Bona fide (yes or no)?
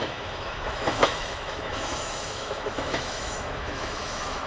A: no